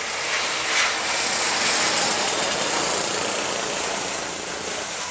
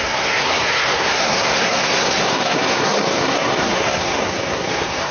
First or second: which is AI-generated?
second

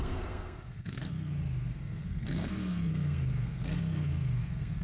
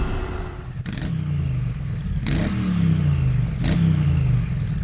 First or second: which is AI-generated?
first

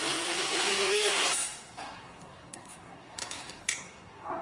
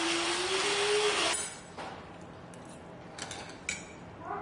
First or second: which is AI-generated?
first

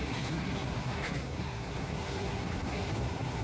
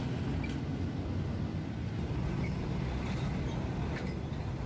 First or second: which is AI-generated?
first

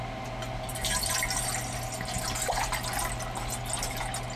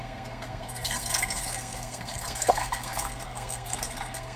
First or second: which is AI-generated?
second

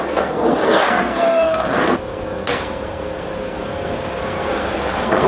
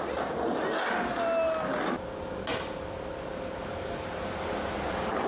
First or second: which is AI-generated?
first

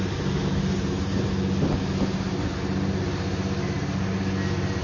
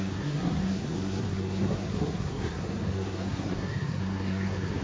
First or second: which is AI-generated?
second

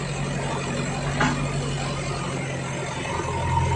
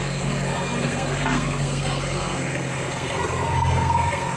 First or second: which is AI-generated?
second